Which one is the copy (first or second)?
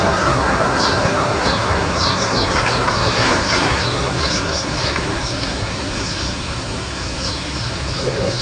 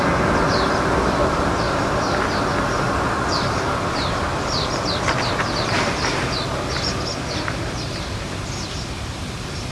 first